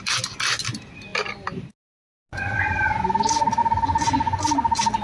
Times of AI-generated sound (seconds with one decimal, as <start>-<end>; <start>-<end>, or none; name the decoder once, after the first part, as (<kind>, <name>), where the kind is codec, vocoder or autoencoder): 2.3-3.0 (vocoder, Vocos); 3.6-4.4